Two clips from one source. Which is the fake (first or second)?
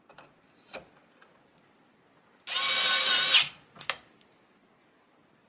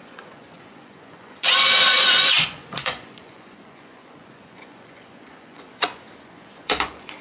second